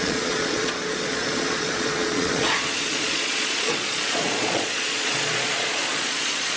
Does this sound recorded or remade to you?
remade